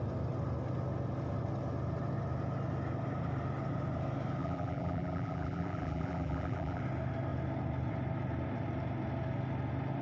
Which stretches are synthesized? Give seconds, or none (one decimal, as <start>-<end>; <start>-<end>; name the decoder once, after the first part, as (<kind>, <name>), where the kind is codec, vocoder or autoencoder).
4.4-6.8 (vocoder, BigVGAN v2)